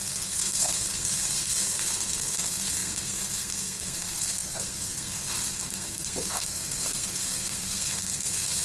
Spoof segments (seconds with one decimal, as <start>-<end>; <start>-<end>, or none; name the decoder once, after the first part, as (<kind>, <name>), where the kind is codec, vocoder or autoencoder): 0.0-8.6 (codec, SNAC)